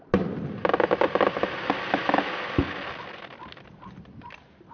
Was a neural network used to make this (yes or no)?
no